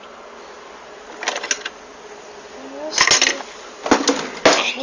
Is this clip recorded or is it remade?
recorded